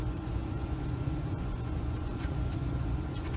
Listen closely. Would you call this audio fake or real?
fake